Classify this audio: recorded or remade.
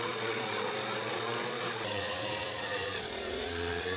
remade